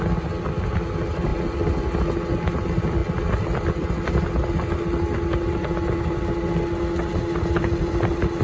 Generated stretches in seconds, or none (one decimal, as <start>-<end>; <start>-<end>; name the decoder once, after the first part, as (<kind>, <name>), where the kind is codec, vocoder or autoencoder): none